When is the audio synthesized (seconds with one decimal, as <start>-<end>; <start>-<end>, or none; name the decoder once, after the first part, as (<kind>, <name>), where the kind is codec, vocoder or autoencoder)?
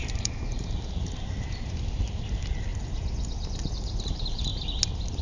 0.0-2.7 (vocoder, BigVGAN v2); 3.7-4.5